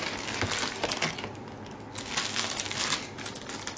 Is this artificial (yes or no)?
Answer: no